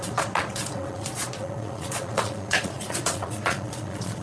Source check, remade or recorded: remade